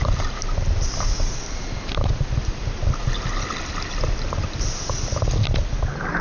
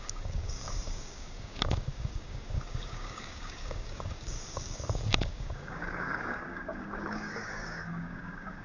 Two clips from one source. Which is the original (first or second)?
first